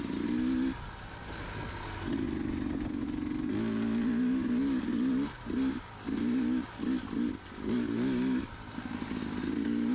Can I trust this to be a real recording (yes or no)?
yes